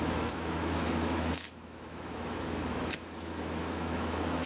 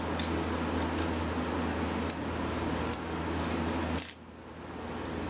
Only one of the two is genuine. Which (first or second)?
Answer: second